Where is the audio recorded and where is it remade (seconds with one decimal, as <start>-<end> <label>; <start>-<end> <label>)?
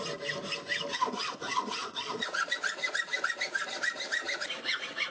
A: 0.0-1.8 recorded; 1.8-2.5 remade; 2.5-5.1 recorded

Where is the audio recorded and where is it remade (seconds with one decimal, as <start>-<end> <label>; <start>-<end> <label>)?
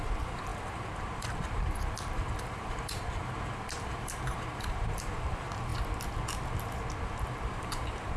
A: 0.0-5.7 remade; 5.7-7.5 recorded; 7.5-8.2 remade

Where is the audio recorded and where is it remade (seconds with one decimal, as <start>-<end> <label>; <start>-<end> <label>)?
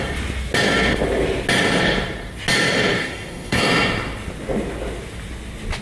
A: 0.0-3.0 recorded; 3.0-3.6 remade; 3.6-5.8 recorded